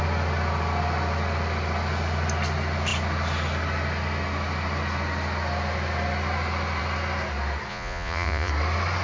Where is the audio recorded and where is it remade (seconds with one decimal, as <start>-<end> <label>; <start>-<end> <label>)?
0.0-7.7 recorded; 7.7-8.5 remade; 8.5-9.0 recorded